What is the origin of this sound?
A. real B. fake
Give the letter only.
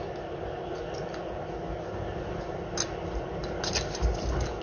A